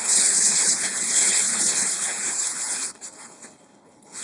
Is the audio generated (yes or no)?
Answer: yes